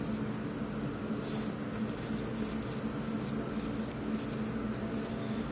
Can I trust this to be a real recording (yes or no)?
yes